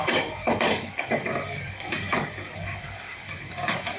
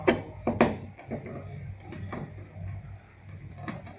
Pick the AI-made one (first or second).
first